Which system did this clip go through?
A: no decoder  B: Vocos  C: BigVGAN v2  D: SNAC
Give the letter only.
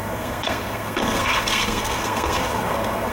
D